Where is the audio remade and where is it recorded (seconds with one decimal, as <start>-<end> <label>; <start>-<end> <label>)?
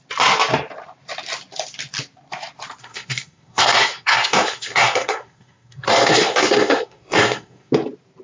0.0-2.8 recorded; 2.8-7.7 remade; 7.7-8.2 recorded